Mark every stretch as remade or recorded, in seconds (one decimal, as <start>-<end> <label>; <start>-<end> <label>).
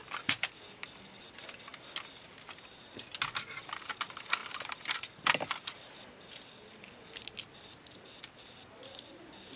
0.0-9.6 recorded